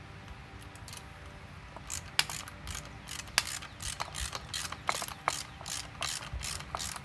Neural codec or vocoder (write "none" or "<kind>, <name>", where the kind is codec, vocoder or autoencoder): none